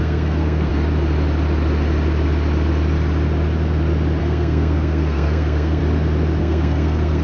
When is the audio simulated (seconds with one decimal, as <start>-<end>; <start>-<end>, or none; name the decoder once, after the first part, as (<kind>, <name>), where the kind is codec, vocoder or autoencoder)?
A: 0.0-0.7 (codec, SNAC); 4.2-5.8; 6.4-7.2